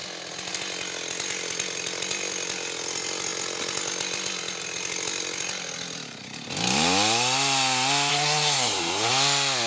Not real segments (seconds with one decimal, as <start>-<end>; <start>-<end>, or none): 8.1-9.1